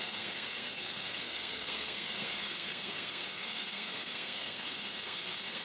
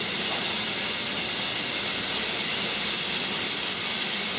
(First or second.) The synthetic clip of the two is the first